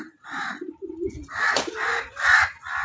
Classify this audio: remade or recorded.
recorded